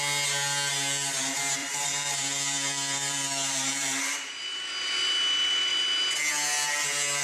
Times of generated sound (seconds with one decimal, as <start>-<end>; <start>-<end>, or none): 1.6-4.3